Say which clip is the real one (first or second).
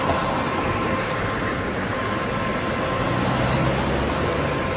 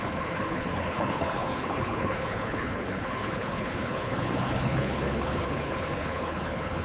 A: first